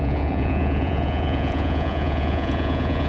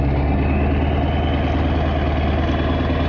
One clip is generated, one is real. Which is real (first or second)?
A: second